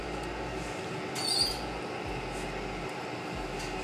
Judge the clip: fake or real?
real